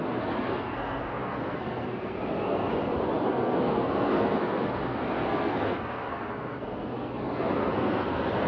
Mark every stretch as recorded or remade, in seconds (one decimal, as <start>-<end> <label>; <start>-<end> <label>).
0.0-2.7 remade; 2.7-3.2 recorded; 3.2-8.5 remade